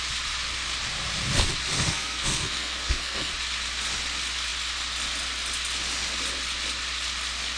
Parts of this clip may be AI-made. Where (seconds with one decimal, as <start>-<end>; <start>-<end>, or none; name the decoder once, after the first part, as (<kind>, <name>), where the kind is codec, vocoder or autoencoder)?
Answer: 1.7-3.3 (codec, SNAC)